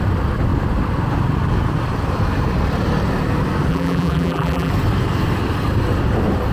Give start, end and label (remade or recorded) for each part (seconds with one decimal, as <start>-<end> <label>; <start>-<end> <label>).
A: 0.0-3.7 recorded; 3.7-4.7 remade; 4.7-6.5 recorded